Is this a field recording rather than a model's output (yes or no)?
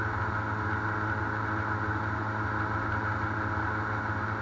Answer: yes